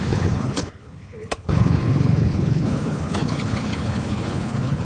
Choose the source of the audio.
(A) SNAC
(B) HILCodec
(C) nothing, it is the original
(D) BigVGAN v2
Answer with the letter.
B